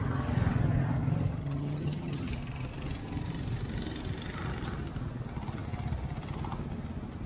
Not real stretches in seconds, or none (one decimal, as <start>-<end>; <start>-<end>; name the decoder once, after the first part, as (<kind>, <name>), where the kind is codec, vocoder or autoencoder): 1.4-2.3 (vocoder, HiFi-GAN)